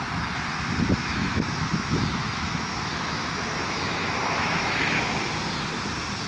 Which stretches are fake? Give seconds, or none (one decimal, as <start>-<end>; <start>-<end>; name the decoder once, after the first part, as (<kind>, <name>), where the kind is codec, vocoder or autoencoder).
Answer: 1.2-5.0 (autoencoder, DAC-VAE)